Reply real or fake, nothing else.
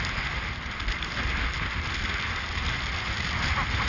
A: real